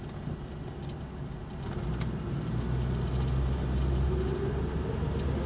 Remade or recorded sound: recorded